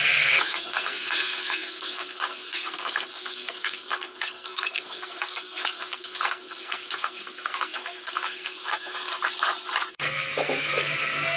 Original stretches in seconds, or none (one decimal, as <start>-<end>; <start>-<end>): 9.1-9.9